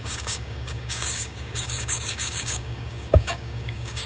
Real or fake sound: fake